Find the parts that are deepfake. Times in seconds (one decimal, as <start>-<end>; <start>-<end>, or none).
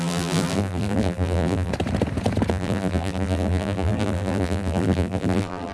0.0-1.7; 2.5-5.7